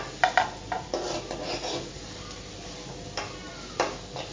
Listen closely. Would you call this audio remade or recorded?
recorded